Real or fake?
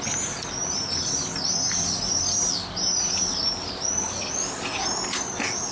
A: real